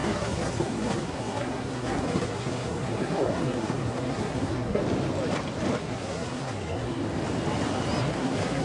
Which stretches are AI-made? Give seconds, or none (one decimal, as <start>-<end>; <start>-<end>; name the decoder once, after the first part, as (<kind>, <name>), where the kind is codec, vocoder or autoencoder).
0.0-4.8 (codec, SNAC); 5.8-7.0; 8.0-8.6